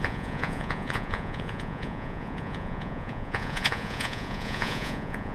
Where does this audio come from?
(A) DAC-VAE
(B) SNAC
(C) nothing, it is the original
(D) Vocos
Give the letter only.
D